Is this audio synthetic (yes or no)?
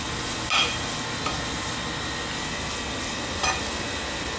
no